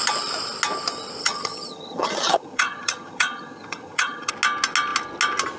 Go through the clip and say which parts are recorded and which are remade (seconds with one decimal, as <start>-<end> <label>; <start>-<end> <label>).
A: 0.0-1.2 recorded; 1.2-4.3 remade; 4.3-5.6 recorded